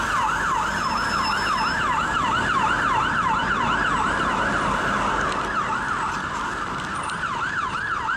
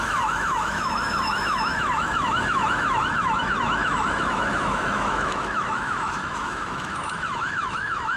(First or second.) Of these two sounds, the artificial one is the second